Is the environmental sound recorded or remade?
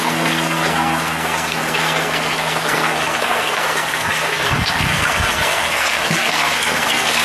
remade